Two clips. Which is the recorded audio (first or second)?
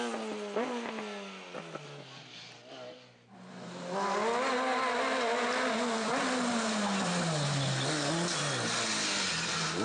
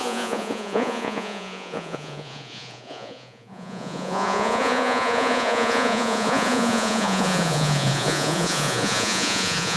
first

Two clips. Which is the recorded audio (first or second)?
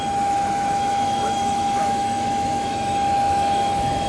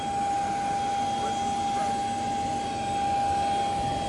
second